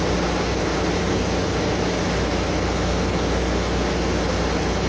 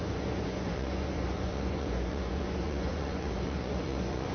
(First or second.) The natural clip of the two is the first